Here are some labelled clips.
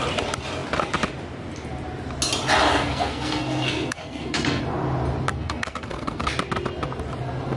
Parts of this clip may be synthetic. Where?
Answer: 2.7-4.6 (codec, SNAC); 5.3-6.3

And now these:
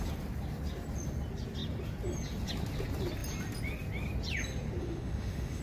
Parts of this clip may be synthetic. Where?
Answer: 4.8-5.6 (autoencoder, DAC-VAE)

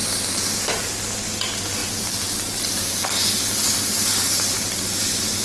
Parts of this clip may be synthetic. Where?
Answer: none

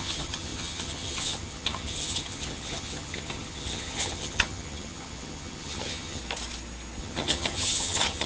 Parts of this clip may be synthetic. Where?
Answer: 0.0-6.2 (vocoder, HiFi-GAN); 7.0-8.3

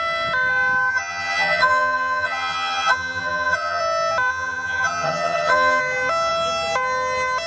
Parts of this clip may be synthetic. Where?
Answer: 0.9-3.8 (vocoder, HiFi-GAN); 4.3-5.8

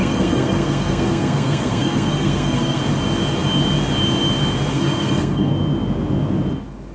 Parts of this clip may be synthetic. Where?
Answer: 0.0-2.8 (codec, SNAC); 4.7-5.5

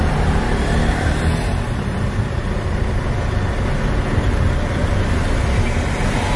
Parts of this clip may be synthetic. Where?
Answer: 0.0-2.8 (vocoder, BigVGAN v2)